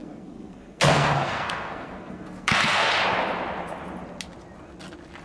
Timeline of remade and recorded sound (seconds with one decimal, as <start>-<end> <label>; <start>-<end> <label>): 0.0-2.9 remade; 2.9-5.2 recorded